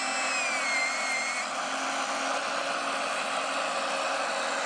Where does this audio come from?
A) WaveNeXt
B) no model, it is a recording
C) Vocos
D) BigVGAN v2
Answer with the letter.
B